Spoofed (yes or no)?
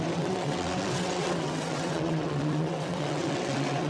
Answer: yes